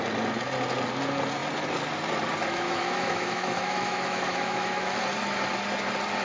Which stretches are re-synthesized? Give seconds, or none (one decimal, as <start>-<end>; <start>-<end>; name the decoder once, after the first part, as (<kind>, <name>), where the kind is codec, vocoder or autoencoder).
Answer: 2.4-5.0 (autoencoder, DAC-VAE)